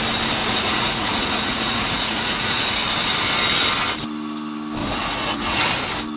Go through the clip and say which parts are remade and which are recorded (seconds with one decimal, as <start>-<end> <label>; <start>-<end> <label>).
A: 0.0-0.4 recorded; 0.4-2.8 remade; 2.8-4.8 recorded; 4.8-5.6 remade; 5.6-6.2 recorded

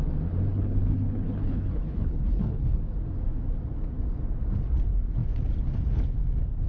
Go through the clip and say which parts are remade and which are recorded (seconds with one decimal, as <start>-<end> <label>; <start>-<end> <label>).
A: 0.0-0.5 recorded; 0.5-2.8 remade; 2.8-6.7 recorded

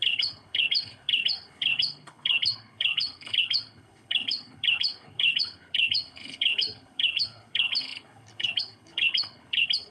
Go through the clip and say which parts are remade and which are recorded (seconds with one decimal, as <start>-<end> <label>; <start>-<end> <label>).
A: 0.0-9.9 remade

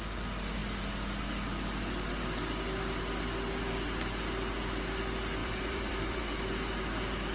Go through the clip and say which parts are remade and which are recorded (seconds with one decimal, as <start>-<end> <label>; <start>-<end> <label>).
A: 0.0-5.4 recorded; 5.4-6.2 remade; 6.2-7.3 recorded

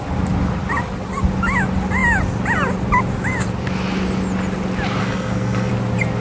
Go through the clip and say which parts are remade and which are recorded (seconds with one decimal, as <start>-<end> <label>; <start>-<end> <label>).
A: 0.0-5.0 recorded; 5.0-5.7 remade; 5.7-6.2 recorded

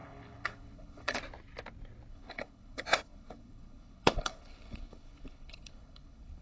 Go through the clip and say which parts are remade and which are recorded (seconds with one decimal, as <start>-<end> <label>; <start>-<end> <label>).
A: 0.0-1.2 remade; 1.2-2.1 recorded; 2.1-6.4 remade